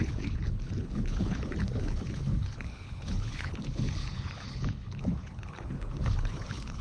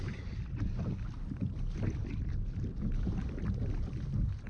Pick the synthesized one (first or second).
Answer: first